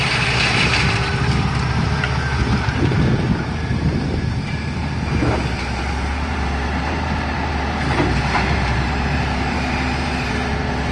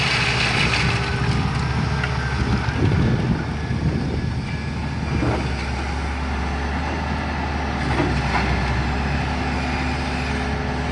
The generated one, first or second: first